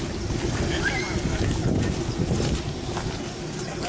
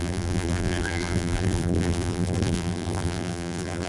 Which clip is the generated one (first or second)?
second